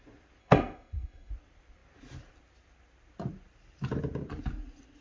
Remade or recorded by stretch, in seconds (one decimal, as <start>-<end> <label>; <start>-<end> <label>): 0.0-0.4 recorded; 0.4-1.3 remade; 1.3-5.0 recorded